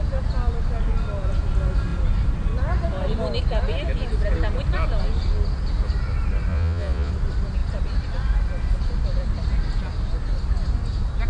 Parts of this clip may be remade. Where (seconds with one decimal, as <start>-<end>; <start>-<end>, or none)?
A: 6.5-7.1